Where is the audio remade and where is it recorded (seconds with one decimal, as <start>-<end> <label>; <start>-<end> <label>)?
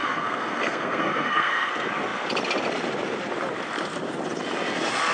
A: 0.0-1.7 remade; 1.7-5.1 recorded